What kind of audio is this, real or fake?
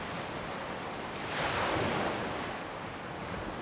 real